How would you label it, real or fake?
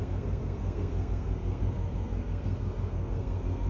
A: fake